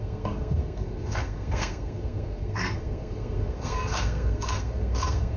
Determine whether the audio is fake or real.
fake